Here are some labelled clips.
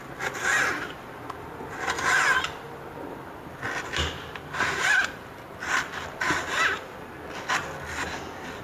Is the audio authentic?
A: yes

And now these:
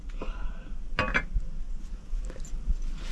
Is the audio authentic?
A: yes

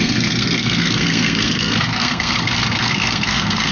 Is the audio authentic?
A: no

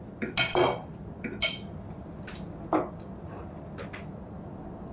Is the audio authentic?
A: yes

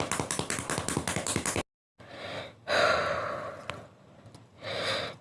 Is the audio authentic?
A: yes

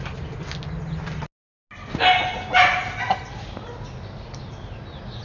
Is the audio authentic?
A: yes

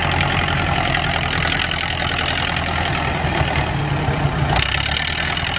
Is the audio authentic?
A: yes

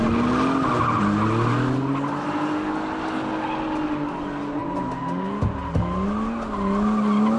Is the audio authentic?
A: yes